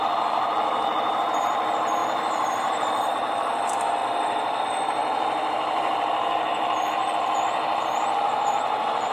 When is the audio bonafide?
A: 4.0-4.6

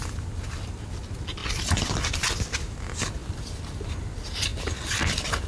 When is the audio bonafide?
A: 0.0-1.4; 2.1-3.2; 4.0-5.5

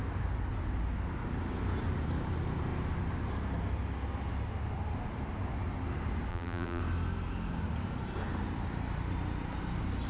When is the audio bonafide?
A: 0.0-6.3; 6.8-10.1

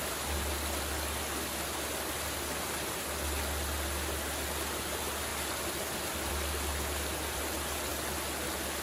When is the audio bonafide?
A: 0.0-8.8

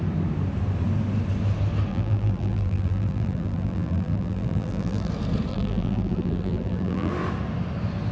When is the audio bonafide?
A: 0.0-1.9; 5.1-5.5; 7.1-8.1